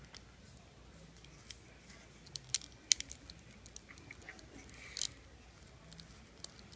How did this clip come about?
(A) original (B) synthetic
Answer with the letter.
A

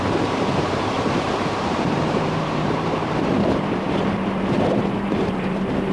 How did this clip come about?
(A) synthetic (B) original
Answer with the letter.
A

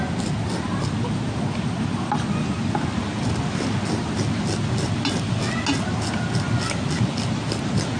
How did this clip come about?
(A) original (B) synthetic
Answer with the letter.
A